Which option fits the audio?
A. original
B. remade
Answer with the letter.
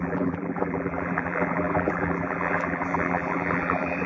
B